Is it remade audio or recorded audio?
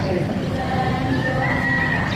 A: recorded